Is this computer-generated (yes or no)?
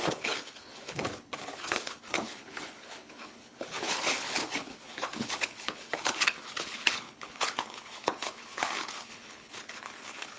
yes